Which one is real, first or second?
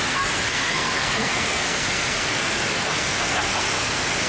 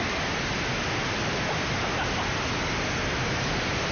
second